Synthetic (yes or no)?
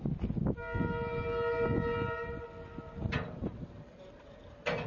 no